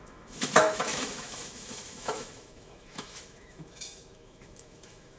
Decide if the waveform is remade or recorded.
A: remade